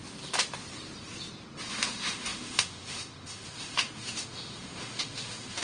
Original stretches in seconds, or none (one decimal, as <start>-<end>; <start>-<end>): 0.0-1.7